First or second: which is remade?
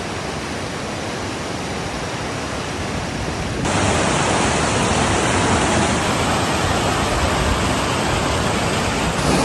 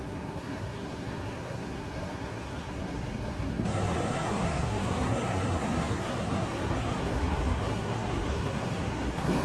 second